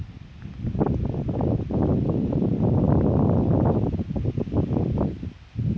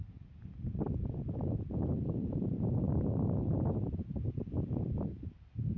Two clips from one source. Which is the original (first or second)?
first